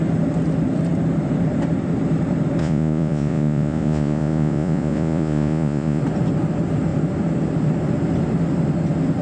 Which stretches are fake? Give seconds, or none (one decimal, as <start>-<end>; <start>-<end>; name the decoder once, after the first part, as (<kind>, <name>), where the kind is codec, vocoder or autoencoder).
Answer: 2.6-6.0 (vocoder, Vocos)